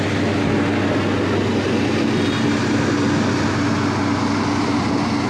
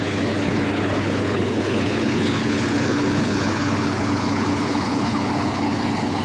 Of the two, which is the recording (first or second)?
first